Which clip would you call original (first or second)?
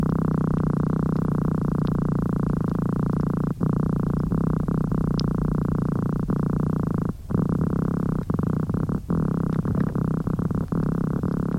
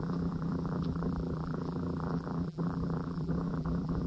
first